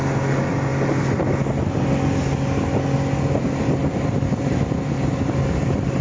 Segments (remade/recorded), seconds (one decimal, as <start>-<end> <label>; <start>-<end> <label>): 0.0-3.8 recorded; 3.8-6.0 remade